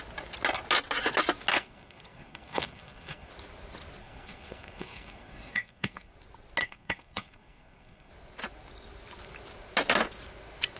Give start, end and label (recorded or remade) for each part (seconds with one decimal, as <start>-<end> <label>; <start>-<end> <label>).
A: 0.0-1.5 recorded; 1.5-3.3 remade; 3.3-4.0 recorded; 4.0-6.1 remade; 6.1-6.6 recorded; 6.6-8.1 remade; 8.1-10.8 recorded